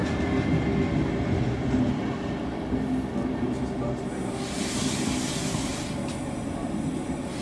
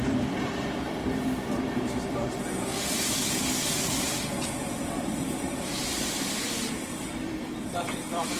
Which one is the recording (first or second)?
first